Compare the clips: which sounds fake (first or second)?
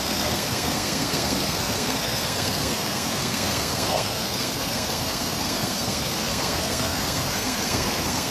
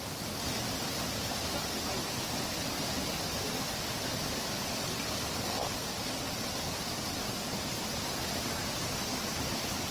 first